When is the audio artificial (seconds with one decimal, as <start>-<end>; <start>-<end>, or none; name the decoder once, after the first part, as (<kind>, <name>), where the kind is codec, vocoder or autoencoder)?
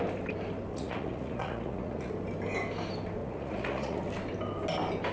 0.7-2.1 (vocoder, Vocos); 3.2-4.0